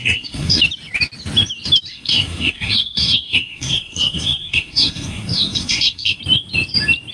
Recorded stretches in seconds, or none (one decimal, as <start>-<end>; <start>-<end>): 0.6-1.9; 6.2-7.1